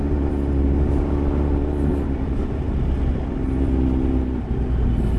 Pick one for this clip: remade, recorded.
recorded